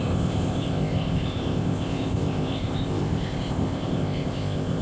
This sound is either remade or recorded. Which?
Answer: remade